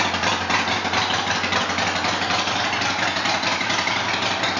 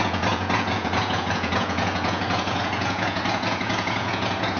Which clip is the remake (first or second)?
second